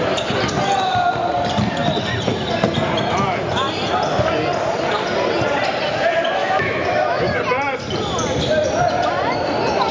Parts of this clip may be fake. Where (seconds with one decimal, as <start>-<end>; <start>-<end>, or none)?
6.4-7.4